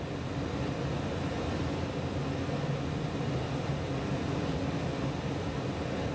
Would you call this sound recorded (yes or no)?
yes